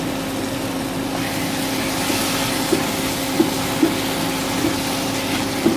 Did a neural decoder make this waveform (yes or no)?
no